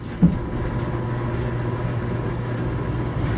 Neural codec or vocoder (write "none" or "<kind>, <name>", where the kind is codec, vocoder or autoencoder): none